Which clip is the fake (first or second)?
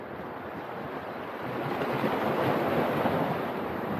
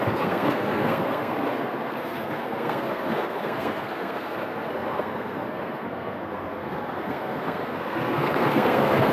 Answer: second